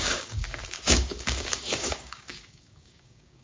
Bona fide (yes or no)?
no